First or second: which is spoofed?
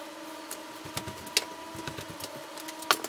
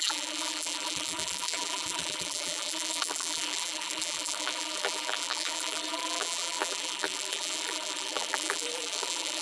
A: second